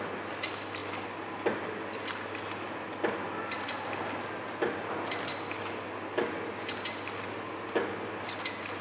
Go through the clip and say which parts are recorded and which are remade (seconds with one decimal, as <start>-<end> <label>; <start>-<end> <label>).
0.0-8.8 recorded